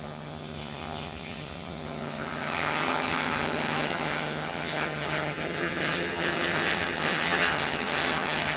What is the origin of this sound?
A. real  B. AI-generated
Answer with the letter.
B